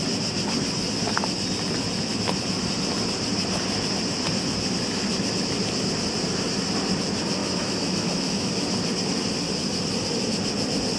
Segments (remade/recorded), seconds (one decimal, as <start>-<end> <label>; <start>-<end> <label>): 0.0-7.4 recorded; 7.4-8.5 remade; 8.5-11.0 recorded